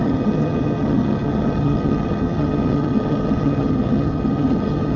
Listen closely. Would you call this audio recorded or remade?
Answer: remade